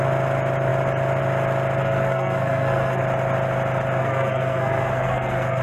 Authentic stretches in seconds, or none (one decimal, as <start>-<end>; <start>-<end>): 0.0-1.8; 3.0-4.0